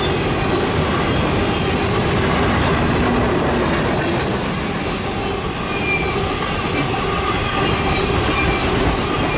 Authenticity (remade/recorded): recorded